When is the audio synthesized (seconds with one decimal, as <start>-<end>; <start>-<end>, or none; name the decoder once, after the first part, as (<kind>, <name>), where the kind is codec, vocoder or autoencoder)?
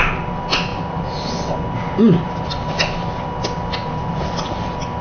none